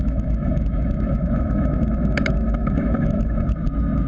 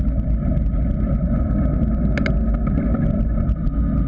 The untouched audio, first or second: second